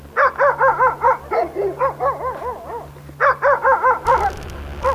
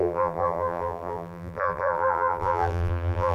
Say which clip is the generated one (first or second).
second